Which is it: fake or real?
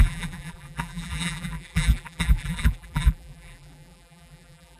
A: fake